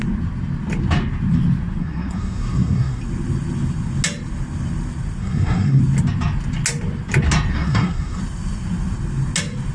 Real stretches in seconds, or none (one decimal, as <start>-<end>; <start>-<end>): 0.0-1.8; 3.0-5.2; 5.8-7.5; 8.2-9.7